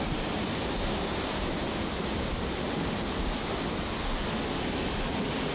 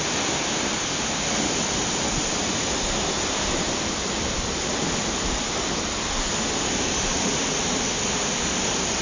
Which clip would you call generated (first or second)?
second